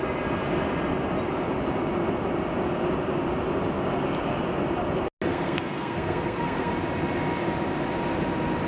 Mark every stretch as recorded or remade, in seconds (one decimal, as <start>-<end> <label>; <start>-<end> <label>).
0.0-5.3 recorded; 5.3-6.7 remade; 6.7-8.7 recorded